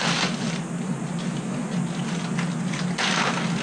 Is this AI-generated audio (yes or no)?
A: no